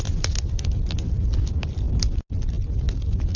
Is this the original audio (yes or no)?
yes